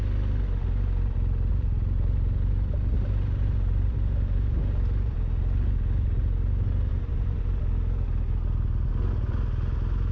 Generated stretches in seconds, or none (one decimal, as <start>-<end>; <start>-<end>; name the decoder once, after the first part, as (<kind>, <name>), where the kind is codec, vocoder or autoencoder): 1.5-5.4 (vocoder, BigVGAN v2); 6.9-7.6